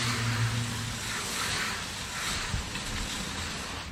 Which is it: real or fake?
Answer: real